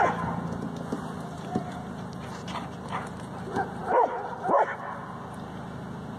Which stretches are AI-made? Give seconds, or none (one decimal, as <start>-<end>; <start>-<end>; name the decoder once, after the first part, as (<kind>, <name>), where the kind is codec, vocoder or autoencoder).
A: 3.8-4.4 (vocoder, BigVGAN v2)